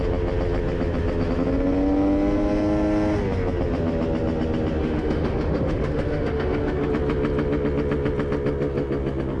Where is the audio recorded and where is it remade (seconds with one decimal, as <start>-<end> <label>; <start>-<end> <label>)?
0.0-4.8 recorded; 4.8-6.9 remade; 6.9-9.4 recorded